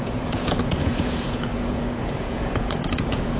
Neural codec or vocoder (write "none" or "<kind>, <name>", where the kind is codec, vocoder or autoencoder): vocoder, Vocos